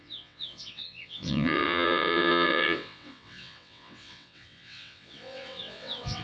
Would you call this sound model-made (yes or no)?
yes